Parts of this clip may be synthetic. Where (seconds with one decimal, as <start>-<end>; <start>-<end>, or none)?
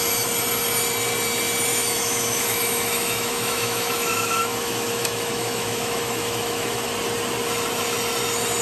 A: 1.7-6.9